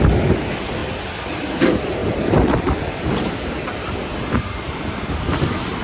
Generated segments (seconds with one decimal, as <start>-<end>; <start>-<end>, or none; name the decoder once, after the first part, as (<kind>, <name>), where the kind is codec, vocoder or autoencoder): 2.0-5.8 (vocoder, BigVGAN v2)